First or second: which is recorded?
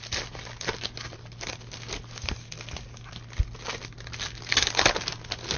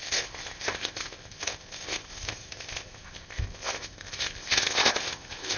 first